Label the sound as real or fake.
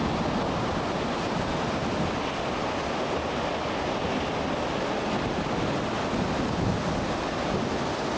real